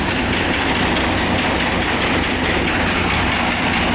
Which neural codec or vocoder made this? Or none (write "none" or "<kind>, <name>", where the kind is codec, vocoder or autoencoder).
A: none